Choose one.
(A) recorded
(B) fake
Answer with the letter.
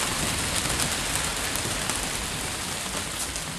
A